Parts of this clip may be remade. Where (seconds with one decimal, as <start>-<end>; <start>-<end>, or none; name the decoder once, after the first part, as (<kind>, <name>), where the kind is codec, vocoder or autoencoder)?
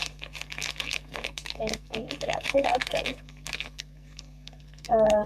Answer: 0.0-5.3 (codec, SNAC)